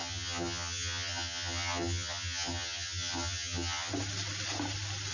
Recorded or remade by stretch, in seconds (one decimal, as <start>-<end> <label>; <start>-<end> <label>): 0.0-3.9 remade; 3.9-5.1 recorded